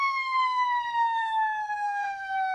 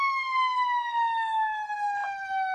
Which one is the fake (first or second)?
first